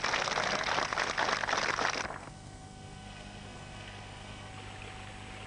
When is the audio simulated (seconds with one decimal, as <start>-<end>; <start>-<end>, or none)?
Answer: 2.2-4.5